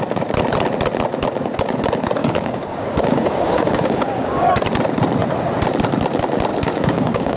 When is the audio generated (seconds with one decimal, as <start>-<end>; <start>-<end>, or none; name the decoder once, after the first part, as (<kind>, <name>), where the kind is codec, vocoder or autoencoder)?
2.2-4.5 (codec, DAC); 6.5-7.4